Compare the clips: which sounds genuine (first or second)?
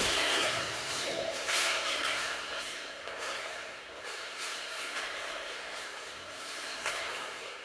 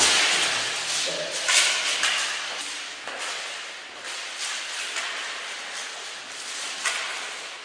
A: second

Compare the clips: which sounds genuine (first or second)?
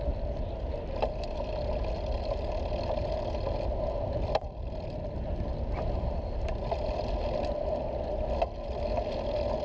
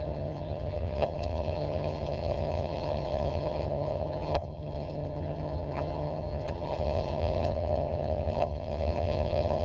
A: first